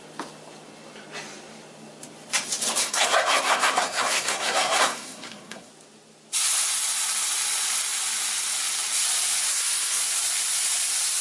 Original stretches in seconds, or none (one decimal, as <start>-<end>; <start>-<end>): 0.0-2.8; 5.7-9.5; 10.0-11.2